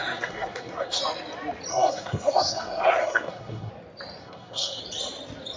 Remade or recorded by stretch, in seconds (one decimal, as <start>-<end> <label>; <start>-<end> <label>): 0.0-1.0 remade; 1.0-1.7 recorded; 1.7-3.7 remade; 3.7-4.2 recorded; 4.2-4.8 remade; 4.8-5.6 recorded